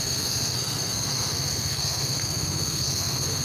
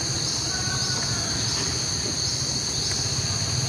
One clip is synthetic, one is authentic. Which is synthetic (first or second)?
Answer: first